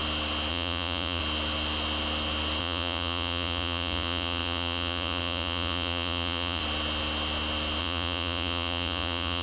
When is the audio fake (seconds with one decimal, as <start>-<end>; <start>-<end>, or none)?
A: 0.5-1.2; 2.6-6.6; 7.8-9.4